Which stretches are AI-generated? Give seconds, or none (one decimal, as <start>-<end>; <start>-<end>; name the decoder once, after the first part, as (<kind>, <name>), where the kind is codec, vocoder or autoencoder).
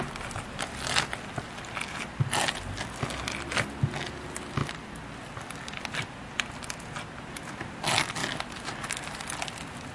none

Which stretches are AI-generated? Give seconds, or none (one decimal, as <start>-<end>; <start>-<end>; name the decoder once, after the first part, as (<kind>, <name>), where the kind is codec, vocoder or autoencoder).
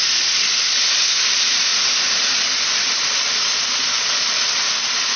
none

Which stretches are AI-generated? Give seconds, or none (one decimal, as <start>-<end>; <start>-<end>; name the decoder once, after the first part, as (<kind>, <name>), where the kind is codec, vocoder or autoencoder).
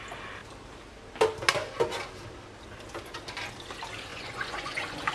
4.1-5.1 (vocoder, Vocos)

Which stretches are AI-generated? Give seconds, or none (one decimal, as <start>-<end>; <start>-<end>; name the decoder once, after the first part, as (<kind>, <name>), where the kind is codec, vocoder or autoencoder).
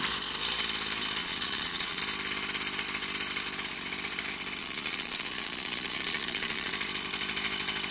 1.2-2.0 (vocoder, Vocos); 4.6-6.7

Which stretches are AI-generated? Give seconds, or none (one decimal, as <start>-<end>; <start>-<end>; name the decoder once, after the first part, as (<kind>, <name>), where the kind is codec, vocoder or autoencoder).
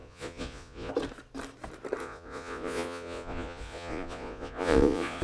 0.0-0.9 (vocoder, Vocos); 2.0-5.2